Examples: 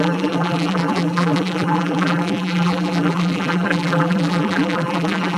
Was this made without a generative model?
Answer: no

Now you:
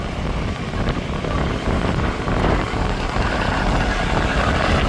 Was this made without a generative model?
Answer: yes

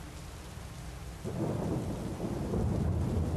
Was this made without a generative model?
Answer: yes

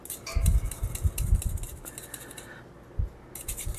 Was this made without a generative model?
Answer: yes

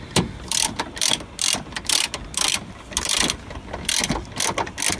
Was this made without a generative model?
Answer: yes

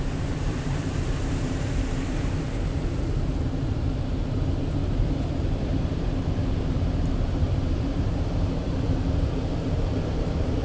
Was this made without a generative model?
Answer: no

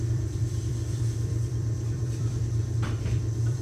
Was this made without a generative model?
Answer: no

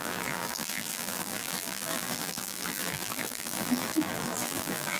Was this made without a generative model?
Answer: no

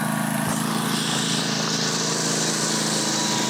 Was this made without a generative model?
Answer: yes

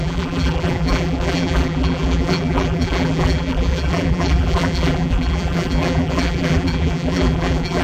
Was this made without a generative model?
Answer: no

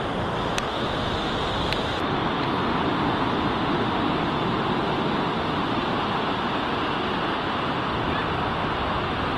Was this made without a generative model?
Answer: yes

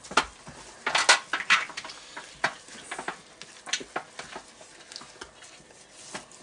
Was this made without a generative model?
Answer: yes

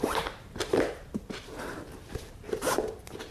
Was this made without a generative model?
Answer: no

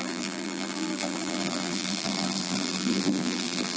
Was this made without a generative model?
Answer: no